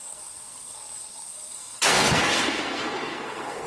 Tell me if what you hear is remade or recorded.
remade